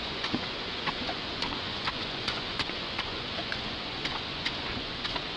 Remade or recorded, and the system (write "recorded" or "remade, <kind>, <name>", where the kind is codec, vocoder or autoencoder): remade, vocoder, Vocos